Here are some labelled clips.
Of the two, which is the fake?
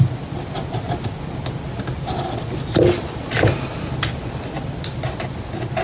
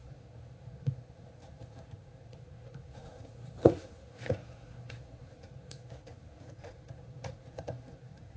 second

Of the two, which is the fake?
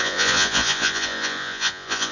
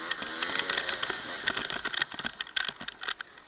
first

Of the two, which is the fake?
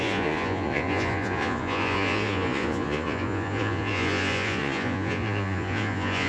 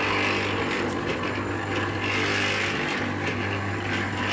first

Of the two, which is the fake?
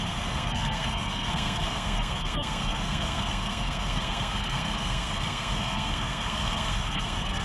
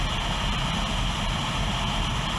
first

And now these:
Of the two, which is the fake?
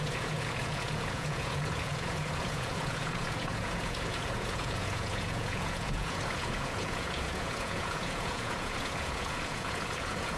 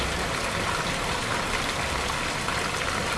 first